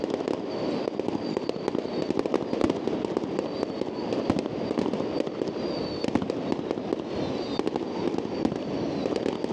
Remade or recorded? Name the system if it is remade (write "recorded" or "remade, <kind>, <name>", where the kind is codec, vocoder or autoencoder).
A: recorded